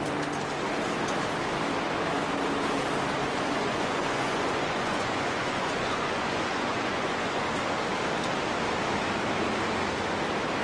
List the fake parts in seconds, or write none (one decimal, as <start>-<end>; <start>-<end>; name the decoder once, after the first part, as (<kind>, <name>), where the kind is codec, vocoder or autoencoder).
3.2-7.5 (vocoder, Vocos)